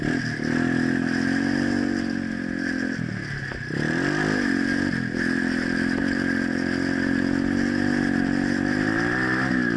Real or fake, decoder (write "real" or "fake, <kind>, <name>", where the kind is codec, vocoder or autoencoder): real